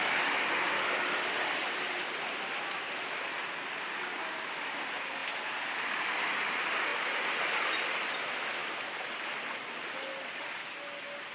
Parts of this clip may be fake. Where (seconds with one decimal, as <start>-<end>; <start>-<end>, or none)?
none